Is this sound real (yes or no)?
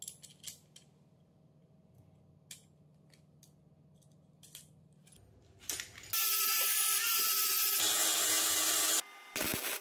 yes